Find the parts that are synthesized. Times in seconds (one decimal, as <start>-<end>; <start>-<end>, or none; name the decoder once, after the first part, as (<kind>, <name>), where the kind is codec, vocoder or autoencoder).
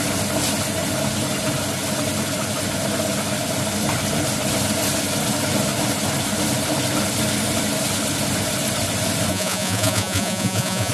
9.3-10.9 (vocoder, Vocos)